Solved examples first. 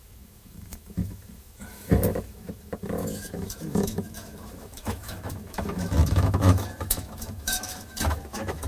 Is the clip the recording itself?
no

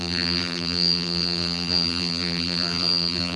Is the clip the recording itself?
no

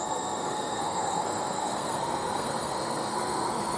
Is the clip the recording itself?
no